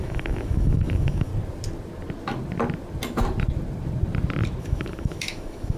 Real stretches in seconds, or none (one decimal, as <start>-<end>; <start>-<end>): 1.3-4.6